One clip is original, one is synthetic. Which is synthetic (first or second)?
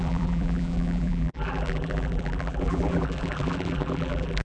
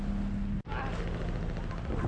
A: first